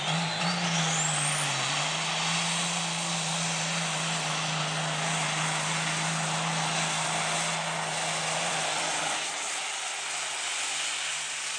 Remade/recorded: recorded